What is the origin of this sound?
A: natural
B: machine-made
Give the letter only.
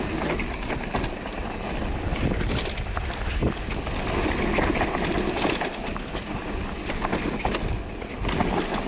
A